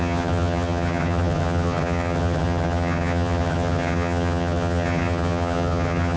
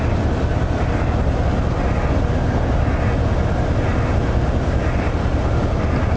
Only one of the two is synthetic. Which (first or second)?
first